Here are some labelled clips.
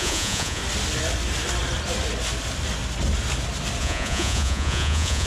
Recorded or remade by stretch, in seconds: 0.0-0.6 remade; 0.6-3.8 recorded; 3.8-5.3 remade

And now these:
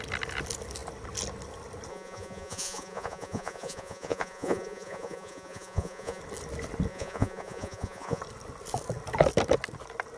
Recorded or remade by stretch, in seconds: 0.0-1.9 recorded; 1.9-6.2 remade; 6.2-6.9 recorded; 6.9-8.2 remade; 8.2-10.2 recorded

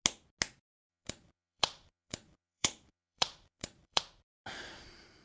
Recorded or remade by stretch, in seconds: 0.0-0.9 recorded; 0.9-4.0 remade; 4.0-5.2 recorded

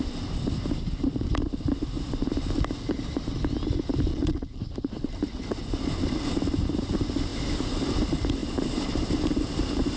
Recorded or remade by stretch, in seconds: 0.0-4.1 recorded; 4.1-4.6 remade; 4.6-10.0 recorded

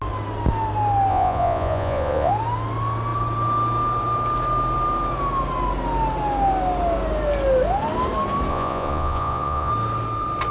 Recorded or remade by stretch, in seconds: 0.0-1.1 recorded; 1.1-2.3 remade; 2.3-8.5 recorded; 8.5-9.7 remade; 9.7-10.5 recorded

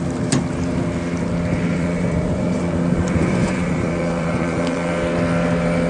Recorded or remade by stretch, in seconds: 0.0-1.7 recorded; 1.7-4.9 remade; 4.9-5.9 recorded

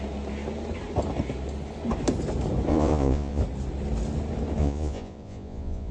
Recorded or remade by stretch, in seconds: 0.0-2.7 recorded; 2.7-3.4 remade; 3.4-4.6 recorded; 4.6-5.9 remade